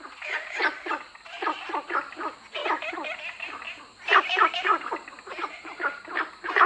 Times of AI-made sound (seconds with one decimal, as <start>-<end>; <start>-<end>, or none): none